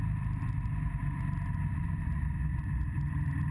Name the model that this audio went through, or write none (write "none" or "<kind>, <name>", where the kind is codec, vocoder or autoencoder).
vocoder, BigVGAN v2